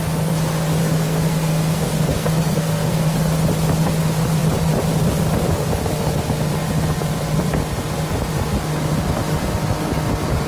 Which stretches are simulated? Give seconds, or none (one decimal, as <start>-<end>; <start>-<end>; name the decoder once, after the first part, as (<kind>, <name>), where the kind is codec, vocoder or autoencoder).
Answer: 0.8-3.2 (codec, SNAC)